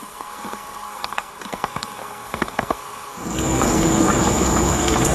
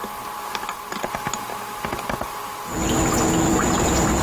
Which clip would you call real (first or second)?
second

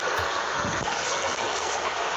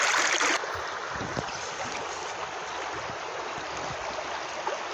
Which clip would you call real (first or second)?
second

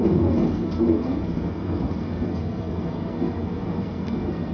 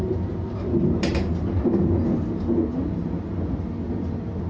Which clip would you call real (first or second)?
second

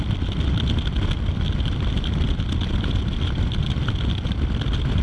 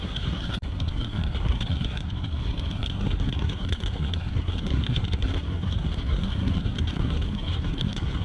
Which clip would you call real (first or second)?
first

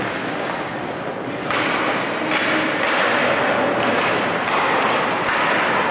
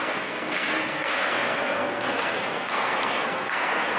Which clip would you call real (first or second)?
first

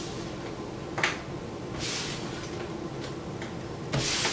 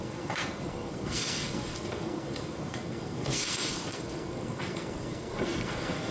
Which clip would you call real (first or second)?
first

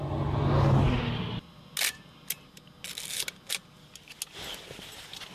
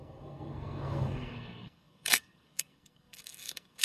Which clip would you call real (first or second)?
first